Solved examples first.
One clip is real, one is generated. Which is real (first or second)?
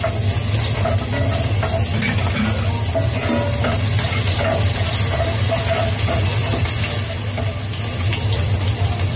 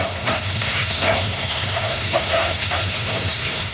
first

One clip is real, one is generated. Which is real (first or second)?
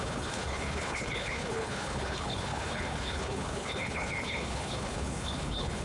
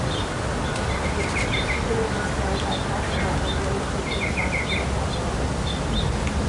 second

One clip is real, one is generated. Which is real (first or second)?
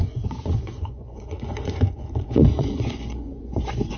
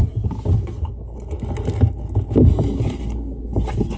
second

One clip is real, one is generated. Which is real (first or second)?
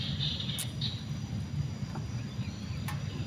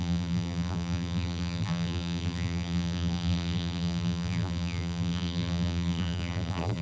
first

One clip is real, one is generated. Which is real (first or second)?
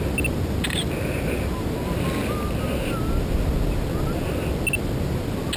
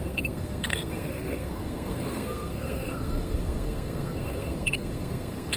first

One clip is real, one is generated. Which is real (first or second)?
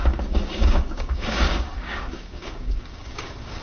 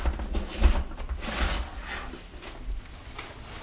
second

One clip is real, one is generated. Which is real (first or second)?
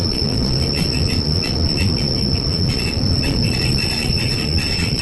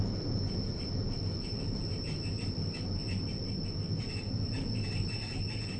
second